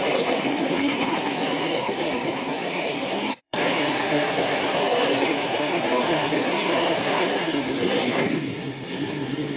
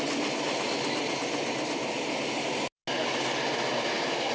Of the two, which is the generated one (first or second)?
first